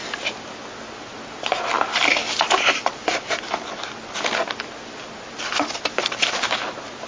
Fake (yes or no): no